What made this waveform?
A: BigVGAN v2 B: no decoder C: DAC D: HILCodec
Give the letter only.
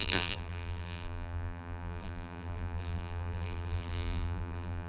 A